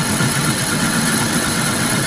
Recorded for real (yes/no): no